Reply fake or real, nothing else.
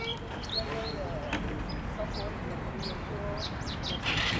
real